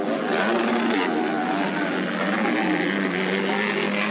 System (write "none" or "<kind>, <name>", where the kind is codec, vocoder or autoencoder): none